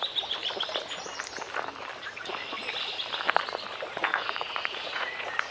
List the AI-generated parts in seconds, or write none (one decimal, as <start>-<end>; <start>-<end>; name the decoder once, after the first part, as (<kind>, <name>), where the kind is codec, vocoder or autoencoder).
4.0-5.5 (vocoder, Vocos)